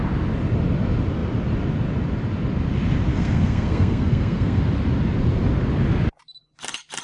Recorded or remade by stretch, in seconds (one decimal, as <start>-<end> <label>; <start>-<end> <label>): 0.0-3.1 recorded; 3.1-4.6 remade; 4.6-7.0 recorded